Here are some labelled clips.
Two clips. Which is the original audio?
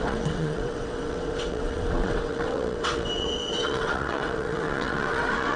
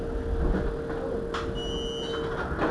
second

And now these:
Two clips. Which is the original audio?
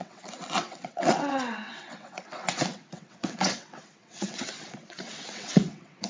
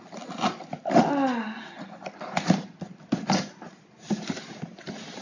second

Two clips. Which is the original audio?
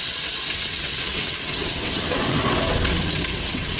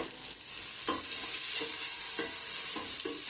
second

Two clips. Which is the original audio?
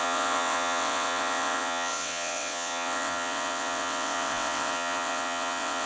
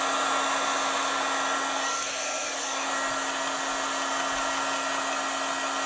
second